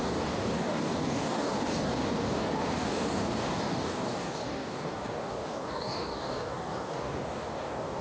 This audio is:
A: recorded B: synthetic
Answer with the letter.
B